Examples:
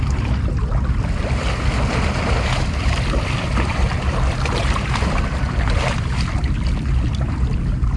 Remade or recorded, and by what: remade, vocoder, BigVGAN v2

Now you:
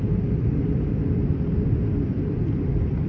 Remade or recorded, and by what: remade, vocoder, BigVGAN v2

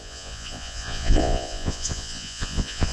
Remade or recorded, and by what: remade, vocoder, Vocos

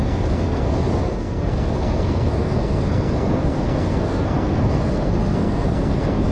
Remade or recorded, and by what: remade, codec, SNAC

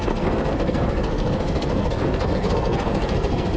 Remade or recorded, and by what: remade, codec, SNAC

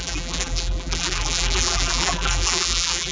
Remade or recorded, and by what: remade, vocoder, BigVGAN v2